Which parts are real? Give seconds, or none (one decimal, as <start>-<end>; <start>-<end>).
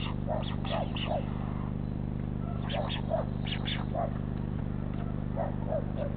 0.0-6.2